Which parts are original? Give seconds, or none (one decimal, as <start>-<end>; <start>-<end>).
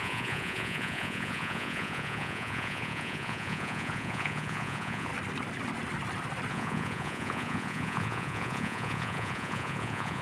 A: 5.1-6.5